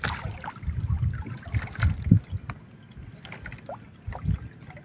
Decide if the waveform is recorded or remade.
recorded